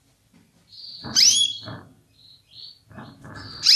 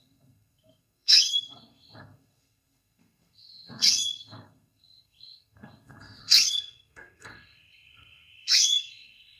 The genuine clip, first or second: first